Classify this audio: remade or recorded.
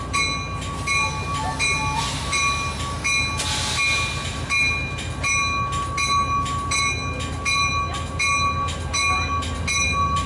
recorded